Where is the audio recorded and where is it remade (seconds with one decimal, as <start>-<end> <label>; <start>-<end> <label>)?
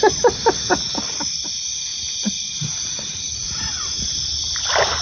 0.0-1.9 recorded; 1.9-4.4 remade; 4.4-5.0 recorded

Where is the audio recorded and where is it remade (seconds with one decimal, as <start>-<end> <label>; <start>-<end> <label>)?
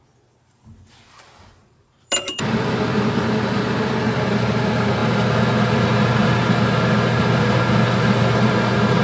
0.0-1.6 recorded; 1.6-2.4 remade; 2.4-9.0 recorded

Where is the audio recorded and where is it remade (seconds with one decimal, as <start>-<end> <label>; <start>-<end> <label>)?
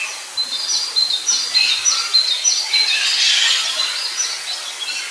0.0-0.5 recorded; 0.5-1.7 remade; 1.7-2.3 recorded; 2.3-3.2 remade; 3.2-5.1 recorded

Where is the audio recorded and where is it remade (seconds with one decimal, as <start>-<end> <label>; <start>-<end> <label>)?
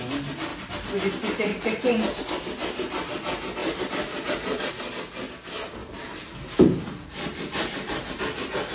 0.0-0.5 recorded; 0.5-1.1 remade; 1.1-1.5 recorded; 1.5-2.2 remade; 2.2-3.6 recorded; 3.6-4.7 remade; 4.7-5.8 recorded; 5.8-8.2 remade; 8.2-8.7 recorded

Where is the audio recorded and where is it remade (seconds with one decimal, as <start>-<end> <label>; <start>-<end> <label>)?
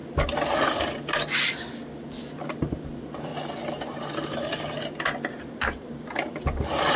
0.0-2.7 recorded; 2.7-3.3 remade; 3.3-5.6 recorded; 5.6-7.0 remade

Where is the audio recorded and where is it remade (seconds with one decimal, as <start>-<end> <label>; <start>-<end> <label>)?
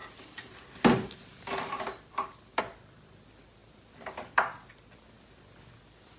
0.0-3.6 recorded; 3.6-4.7 remade; 4.7-6.2 recorded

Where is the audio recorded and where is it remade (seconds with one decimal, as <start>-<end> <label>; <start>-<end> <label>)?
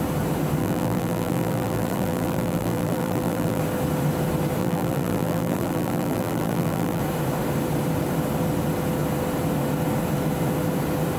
0.0-0.6 recorded; 0.6-3.6 remade; 3.6-4.6 recorded; 4.6-7.0 remade; 7.0-11.2 recorded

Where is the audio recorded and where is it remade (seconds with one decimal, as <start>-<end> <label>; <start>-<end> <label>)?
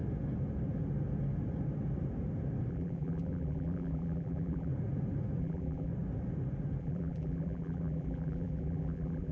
0.0-2.7 recorded; 2.7-4.7 remade; 4.7-5.4 recorded; 5.4-5.9 remade; 5.9-6.8 recorded; 6.8-9.3 remade